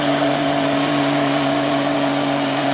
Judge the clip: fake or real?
fake